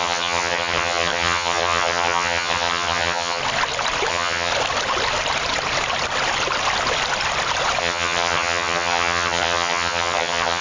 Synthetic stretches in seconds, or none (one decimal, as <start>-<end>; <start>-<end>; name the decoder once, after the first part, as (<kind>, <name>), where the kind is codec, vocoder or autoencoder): 0.0-3.4 (vocoder, HiFi-GAN); 4.1-4.5; 7.8-10.6